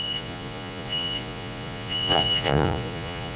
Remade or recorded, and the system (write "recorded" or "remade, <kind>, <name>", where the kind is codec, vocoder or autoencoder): remade, vocoder, Vocos